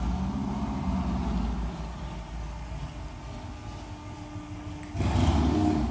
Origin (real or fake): real